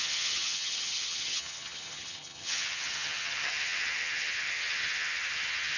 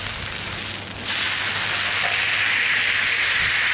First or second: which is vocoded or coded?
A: first